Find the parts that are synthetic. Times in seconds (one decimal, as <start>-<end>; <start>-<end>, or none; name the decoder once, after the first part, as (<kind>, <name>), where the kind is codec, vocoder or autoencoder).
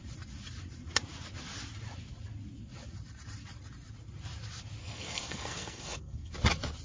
4.8-6.3 (codec, SNAC)